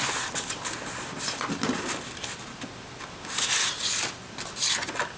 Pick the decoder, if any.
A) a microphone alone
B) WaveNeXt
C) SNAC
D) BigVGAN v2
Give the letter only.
A